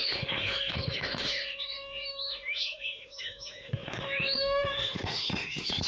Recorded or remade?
remade